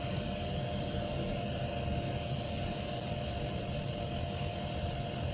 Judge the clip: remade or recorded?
recorded